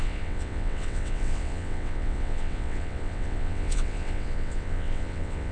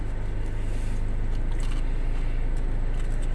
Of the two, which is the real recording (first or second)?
second